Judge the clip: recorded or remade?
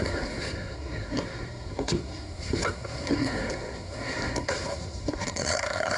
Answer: remade